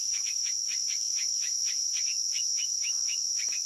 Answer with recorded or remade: remade